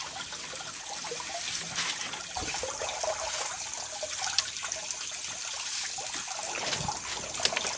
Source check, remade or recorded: recorded